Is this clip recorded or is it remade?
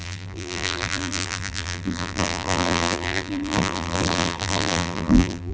remade